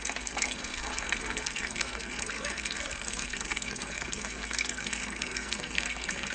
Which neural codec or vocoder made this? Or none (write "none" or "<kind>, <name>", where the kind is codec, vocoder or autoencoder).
codec, SNAC